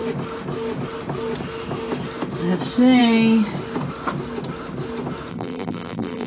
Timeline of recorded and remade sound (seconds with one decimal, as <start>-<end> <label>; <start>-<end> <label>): 0.0-5.3 recorded; 5.3-6.3 remade